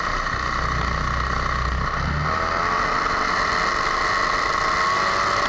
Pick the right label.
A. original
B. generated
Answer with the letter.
A